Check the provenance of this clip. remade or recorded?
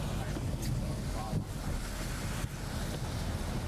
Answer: recorded